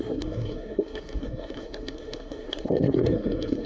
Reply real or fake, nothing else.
fake